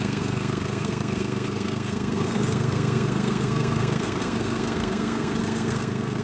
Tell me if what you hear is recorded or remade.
remade